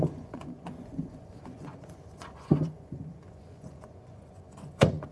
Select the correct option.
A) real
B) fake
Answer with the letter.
B